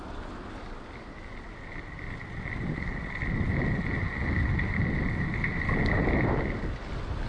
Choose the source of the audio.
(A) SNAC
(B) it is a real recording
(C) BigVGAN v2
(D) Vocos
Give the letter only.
B